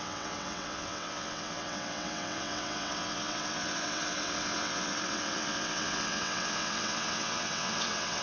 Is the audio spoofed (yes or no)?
yes